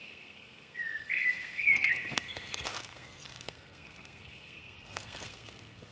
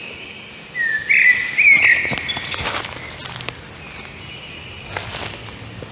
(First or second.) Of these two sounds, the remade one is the first